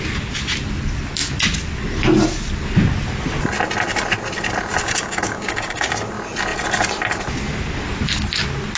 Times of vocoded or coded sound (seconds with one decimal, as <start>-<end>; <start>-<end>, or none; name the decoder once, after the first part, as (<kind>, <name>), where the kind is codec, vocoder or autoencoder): 4.8-5.9 (codec, DAC)